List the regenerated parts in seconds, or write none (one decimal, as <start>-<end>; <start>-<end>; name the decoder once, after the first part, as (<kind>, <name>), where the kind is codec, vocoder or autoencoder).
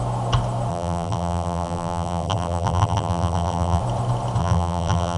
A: 0.7-3.8 (vocoder, BigVGAN v2); 4.4-5.2